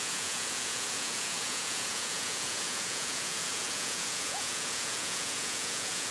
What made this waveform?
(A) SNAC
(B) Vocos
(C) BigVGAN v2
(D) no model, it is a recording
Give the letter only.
B